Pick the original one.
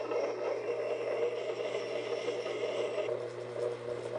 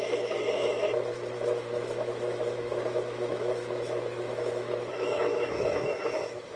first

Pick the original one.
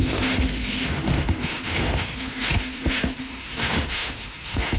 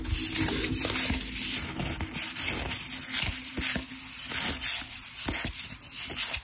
second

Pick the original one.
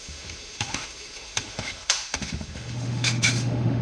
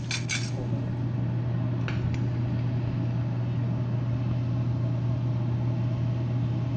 second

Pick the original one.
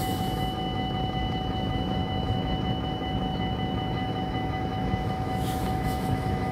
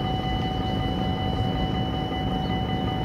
second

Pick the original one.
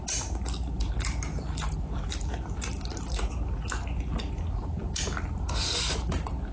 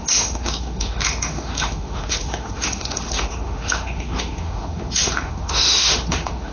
first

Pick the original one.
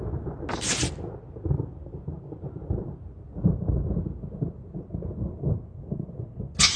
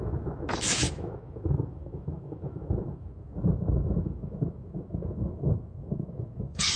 first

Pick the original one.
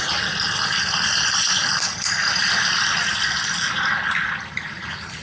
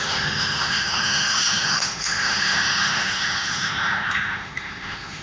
first